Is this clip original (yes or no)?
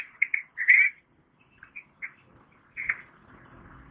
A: yes